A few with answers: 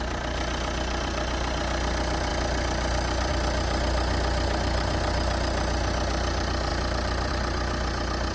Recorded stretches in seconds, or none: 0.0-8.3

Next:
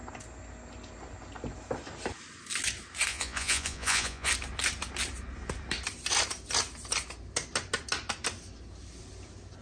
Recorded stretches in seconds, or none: 0.0-3.1; 4.3-9.6